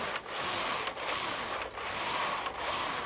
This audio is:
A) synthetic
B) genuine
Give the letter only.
B